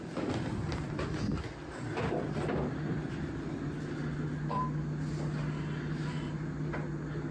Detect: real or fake real